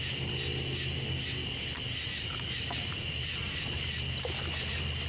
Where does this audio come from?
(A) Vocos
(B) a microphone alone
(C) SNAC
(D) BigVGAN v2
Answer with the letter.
B